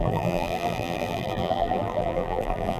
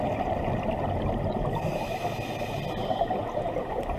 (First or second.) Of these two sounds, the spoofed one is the first